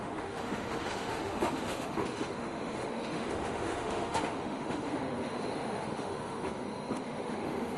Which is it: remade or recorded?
remade